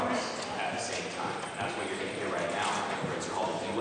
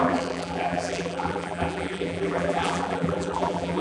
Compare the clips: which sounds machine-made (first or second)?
second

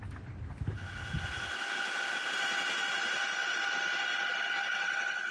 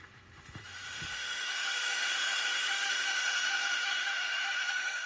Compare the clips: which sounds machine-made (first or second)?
second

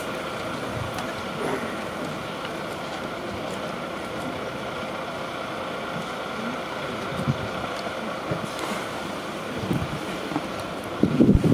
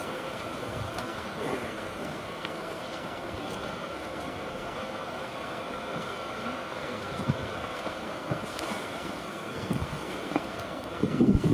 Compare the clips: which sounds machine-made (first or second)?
second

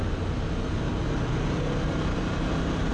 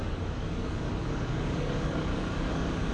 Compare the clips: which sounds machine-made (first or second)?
second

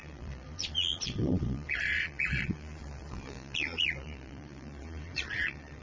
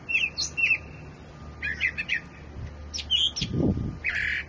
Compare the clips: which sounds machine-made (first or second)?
first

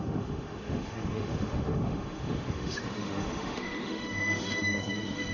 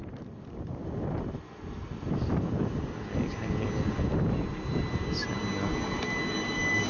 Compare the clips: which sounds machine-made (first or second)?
first